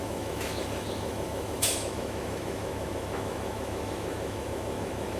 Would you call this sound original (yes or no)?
no